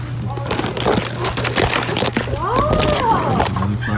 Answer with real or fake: real